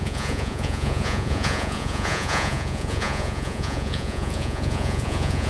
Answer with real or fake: fake